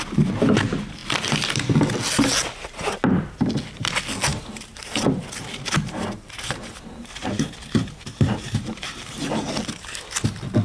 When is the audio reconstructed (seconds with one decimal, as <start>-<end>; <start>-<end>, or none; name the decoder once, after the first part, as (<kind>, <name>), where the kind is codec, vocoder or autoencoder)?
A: 4.3-9.5 (vocoder, BigVGAN v2)